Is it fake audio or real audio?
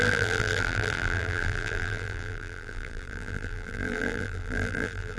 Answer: fake